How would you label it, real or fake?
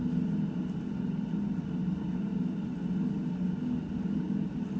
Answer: real